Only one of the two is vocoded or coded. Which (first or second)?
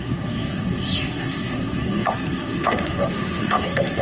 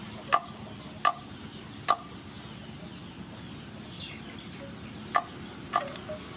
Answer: first